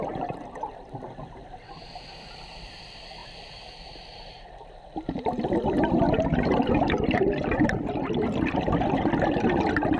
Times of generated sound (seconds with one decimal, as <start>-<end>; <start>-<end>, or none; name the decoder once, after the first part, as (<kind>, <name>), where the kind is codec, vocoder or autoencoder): 0.0-10.0 (vocoder, BigVGAN v2)

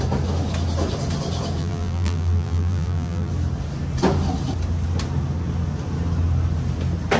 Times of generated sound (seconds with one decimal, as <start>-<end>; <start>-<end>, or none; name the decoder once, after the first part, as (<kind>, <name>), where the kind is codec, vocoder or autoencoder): 1.6-3.3 (vocoder, BigVGAN v2)

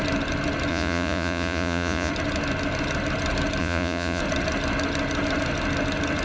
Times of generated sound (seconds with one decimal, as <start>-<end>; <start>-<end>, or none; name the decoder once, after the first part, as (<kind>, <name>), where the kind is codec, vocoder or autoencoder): 0.7-2.1 (vocoder, Vocos); 3.6-4.2

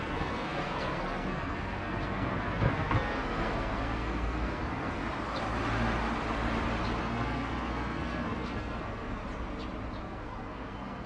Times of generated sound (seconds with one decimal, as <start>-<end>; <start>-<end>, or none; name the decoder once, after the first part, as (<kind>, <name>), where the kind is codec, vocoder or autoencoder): 0.0-5.0 (codec, SNAC); 7.0-9.2; 10.0-11.1

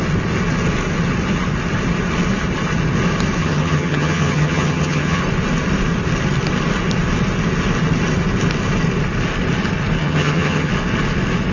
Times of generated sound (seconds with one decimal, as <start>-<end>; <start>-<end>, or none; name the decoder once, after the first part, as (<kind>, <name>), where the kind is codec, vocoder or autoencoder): 3.4-5.2 (vocoder, HiFi-GAN); 10.0-10.7

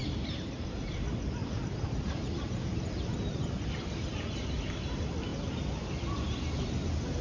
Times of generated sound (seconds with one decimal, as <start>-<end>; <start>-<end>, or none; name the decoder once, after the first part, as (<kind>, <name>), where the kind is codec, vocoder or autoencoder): 1.4-3.0 (vocoder, BigVGAN v2)

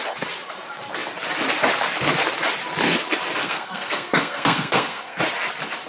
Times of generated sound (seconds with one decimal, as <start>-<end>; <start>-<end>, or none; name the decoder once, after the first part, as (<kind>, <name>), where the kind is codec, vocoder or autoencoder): 3.4-5.2 (codec, SNAC)

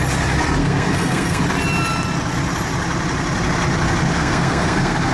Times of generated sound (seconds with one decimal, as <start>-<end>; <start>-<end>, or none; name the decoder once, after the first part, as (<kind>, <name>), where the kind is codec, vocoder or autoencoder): 0.6-1.4 (codec, SNAC); 4.2-5.1